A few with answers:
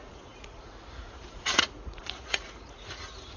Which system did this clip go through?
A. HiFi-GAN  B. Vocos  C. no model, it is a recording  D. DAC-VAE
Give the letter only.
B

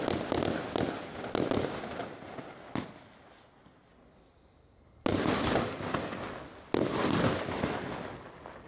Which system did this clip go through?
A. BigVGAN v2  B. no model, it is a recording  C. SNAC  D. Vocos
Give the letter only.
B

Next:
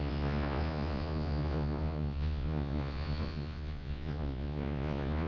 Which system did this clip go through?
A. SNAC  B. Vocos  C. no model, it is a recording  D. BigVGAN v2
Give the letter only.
B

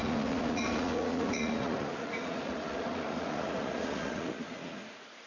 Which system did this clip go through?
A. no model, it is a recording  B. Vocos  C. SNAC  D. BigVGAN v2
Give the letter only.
B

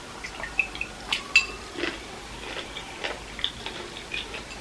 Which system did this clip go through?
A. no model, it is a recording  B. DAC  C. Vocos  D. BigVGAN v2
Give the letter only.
A